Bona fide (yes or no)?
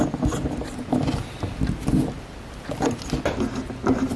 yes